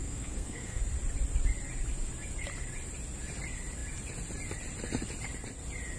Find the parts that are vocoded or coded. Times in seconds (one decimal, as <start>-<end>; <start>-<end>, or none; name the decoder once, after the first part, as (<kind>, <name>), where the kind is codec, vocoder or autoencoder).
0.0-0.8 (codec, SNAC)